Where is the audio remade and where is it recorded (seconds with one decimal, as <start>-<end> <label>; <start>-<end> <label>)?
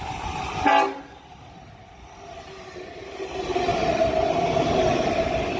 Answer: 0.0-3.7 recorded; 3.7-5.6 remade